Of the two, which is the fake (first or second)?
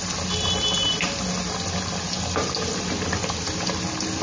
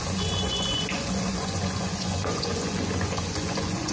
second